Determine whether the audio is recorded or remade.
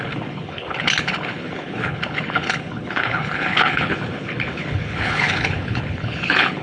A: remade